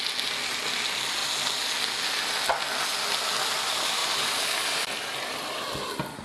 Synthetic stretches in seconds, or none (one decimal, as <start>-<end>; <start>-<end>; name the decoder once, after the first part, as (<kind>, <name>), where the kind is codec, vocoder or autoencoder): none